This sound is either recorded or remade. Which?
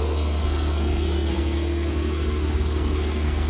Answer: remade